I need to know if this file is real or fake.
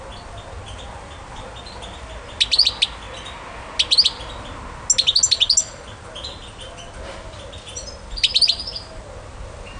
real